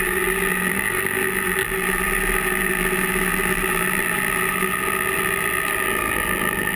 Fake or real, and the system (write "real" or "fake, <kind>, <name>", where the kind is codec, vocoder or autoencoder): fake, vocoder, BigVGAN v2